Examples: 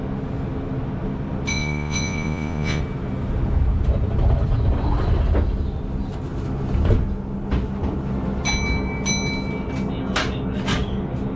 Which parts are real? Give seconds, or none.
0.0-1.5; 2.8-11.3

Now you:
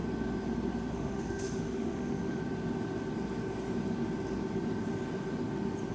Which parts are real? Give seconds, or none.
0.0-0.9; 2.4-5.9

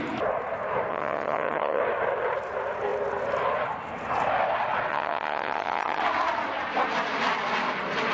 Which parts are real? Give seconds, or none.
0.0-0.9; 1.8-4.9; 6.0-8.1

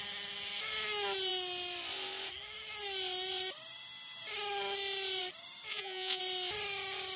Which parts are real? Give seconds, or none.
0.0-5.7; 6.2-7.2

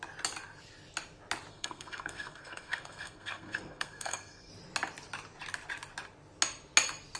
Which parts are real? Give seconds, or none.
0.0-1.5; 4.5-7.2

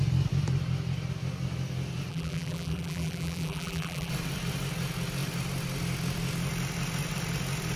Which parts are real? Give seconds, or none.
0.0-2.1; 4.1-7.8